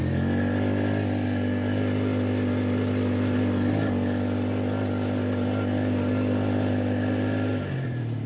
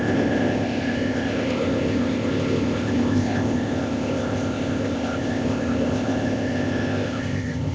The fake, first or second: second